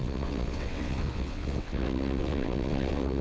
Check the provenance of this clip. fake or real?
fake